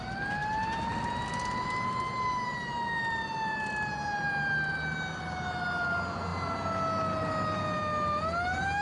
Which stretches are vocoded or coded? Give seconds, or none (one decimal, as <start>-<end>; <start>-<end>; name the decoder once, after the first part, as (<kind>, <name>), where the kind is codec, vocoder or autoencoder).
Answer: none